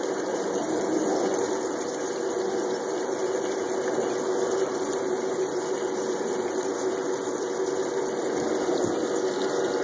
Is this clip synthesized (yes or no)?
no